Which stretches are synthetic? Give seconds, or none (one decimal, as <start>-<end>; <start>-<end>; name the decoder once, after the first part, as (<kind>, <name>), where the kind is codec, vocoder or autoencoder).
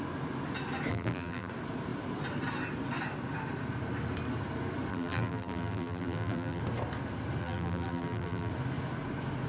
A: 0.9-1.5 (vocoder, BigVGAN v2); 4.9-6.6; 7.4-8.5